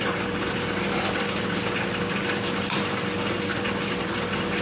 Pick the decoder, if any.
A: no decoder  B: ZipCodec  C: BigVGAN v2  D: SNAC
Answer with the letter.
A